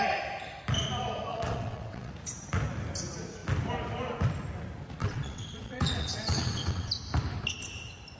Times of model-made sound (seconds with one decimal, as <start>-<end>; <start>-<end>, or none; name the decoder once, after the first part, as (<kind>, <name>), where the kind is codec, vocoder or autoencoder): 1.3-2.1 (vocoder, WaveNeXt); 5.0-6.9